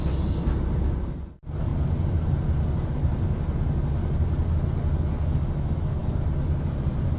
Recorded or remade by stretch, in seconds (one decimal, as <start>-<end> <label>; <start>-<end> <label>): 0.0-7.2 recorded